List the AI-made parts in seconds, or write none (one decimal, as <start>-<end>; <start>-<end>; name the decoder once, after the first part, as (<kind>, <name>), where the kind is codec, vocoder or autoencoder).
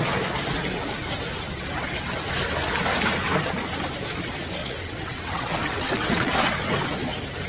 4.6-6.3 (vocoder, WaveNeXt)